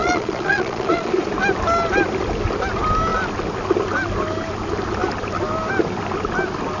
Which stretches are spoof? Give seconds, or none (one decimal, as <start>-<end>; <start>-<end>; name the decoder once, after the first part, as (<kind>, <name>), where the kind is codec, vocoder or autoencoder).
0.0-1.1 (vocoder, Vocos)